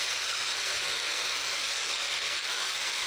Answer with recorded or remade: remade